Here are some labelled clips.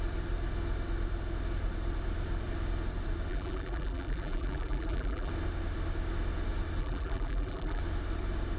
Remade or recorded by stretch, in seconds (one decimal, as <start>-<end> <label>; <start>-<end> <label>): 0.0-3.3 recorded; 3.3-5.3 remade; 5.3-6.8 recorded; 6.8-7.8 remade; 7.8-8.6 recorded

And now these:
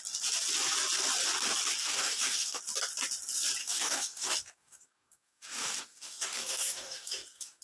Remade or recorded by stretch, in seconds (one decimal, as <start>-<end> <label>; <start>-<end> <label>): 0.0-1.8 recorded; 1.8-2.6 remade; 2.6-3.6 recorded; 3.6-7.6 remade

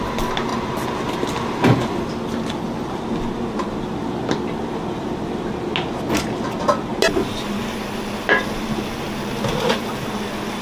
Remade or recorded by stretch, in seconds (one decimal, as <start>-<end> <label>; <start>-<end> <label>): 0.0-10.6 recorded